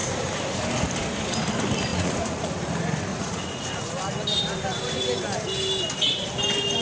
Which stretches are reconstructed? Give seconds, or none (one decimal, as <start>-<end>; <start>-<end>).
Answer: 1.9-2.7; 3.1-3.9